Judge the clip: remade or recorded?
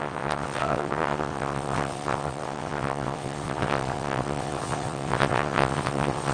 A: remade